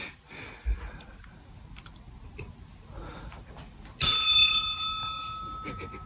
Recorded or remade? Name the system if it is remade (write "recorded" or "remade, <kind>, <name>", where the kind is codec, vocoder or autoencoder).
recorded